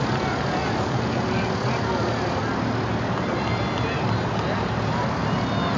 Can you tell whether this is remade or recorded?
recorded